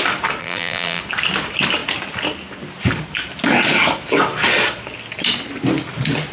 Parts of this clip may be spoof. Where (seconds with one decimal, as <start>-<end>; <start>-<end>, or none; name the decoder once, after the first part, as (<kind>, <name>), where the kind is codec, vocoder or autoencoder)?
0.4-1.0 (vocoder, BigVGAN v2)